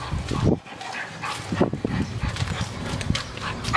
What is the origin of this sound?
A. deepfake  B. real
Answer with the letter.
B